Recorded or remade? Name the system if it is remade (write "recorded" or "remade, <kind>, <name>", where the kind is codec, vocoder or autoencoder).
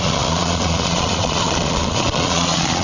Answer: remade, vocoder, Vocos